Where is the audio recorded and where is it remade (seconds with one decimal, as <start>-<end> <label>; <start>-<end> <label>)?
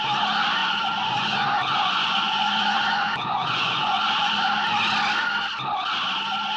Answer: 0.0-0.6 recorded; 0.6-4.3 remade; 4.3-6.6 recorded